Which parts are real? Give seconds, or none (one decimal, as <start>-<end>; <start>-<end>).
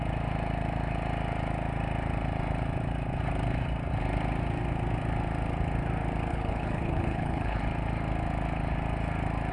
0.0-6.3; 7.6-9.5